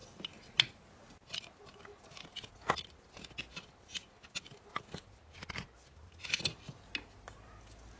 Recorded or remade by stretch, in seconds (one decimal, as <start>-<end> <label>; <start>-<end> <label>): 0.0-8.0 recorded